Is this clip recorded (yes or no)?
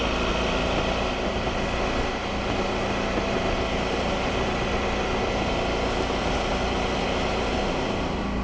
yes